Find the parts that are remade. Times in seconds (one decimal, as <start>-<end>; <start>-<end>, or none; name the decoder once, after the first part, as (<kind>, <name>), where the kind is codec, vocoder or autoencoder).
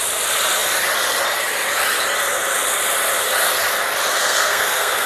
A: 4.2-5.1 (codec, SNAC)